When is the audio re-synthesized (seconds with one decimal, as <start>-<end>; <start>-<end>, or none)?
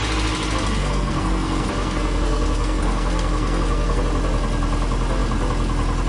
0.8-4.0